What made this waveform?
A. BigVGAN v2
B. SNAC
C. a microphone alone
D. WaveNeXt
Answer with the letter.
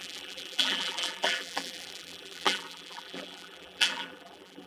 A